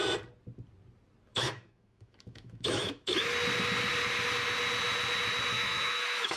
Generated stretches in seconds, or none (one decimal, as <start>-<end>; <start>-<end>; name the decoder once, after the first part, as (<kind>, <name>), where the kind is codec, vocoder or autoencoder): 1.3-3.3 (autoencoder, DAC-VAE); 5.5-6.4